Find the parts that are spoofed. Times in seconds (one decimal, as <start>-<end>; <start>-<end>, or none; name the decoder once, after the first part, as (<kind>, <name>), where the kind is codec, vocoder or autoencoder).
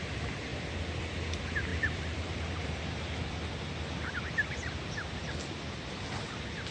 1.7-3.3 (vocoder, BigVGAN v2)